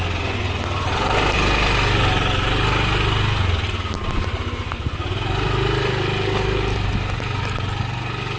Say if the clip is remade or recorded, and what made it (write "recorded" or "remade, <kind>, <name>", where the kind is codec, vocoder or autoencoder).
recorded